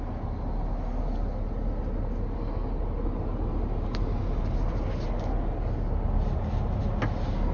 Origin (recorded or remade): recorded